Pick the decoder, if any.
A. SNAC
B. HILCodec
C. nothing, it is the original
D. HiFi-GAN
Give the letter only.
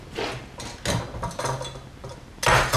C